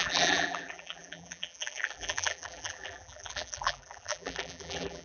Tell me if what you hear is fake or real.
fake